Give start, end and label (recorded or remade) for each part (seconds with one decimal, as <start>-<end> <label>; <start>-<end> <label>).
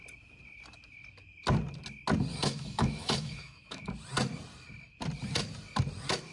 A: 0.0-2.3 recorded; 2.3-3.9 remade; 3.9-6.3 recorded